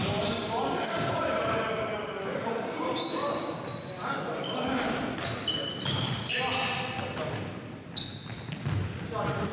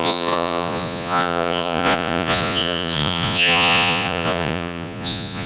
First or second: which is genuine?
first